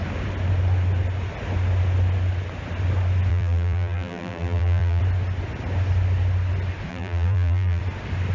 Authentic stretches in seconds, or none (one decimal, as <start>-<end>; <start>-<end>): 0.0-3.3; 5.0-6.9; 7.8-8.3